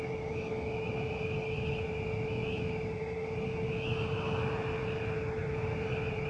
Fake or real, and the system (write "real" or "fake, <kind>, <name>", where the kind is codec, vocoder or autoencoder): real